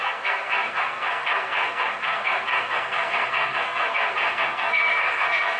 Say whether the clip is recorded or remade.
remade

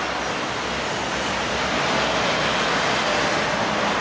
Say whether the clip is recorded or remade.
recorded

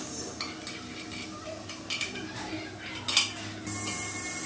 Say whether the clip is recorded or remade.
recorded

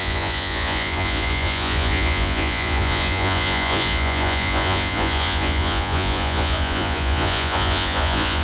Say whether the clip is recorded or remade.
remade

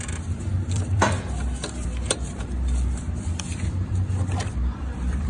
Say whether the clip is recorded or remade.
remade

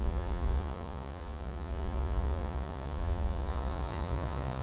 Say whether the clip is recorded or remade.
remade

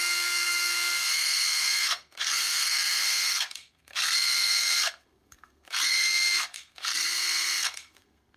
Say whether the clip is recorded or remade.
remade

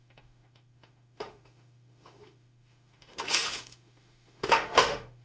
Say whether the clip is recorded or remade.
remade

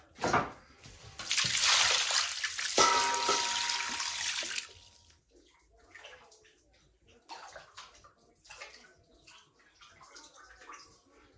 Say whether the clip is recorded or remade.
recorded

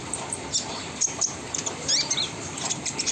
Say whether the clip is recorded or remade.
recorded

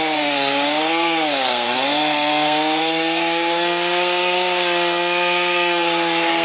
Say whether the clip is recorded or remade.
remade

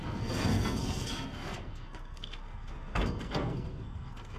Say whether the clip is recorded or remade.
remade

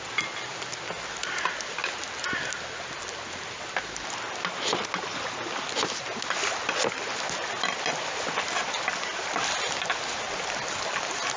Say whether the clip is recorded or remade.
recorded